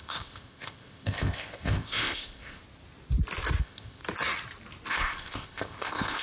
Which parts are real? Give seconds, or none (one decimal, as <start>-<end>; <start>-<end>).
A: 2.6-3.6; 4.0-4.9